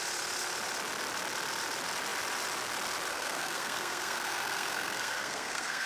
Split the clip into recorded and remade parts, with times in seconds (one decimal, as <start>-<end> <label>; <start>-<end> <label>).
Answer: 0.0-3.1 recorded; 3.1-5.9 remade